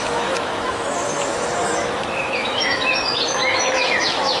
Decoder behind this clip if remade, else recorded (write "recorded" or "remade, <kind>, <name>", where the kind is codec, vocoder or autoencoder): remade, autoencoder, DAC-VAE